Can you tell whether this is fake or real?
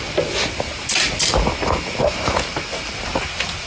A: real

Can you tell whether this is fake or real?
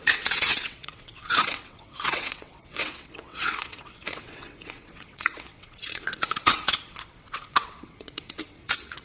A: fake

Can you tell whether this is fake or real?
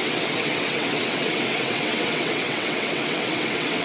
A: fake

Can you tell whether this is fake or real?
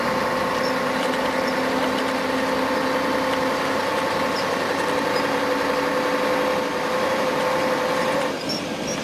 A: real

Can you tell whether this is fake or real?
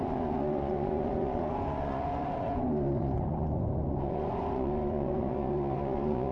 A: fake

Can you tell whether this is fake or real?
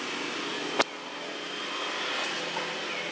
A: real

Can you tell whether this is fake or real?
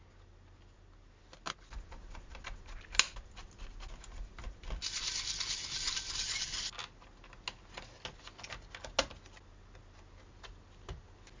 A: real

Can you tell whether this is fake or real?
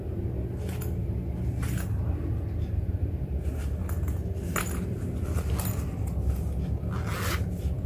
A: real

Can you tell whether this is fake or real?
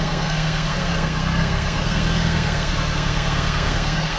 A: fake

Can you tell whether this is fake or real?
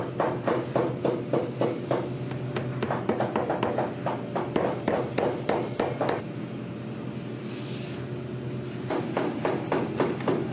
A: real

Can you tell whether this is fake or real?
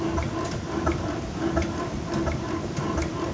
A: real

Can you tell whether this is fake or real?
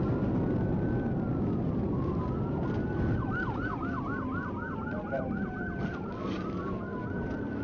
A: real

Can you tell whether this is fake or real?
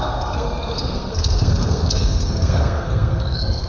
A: fake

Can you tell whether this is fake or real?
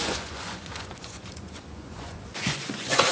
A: fake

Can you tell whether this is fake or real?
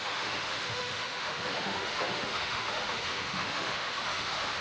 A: fake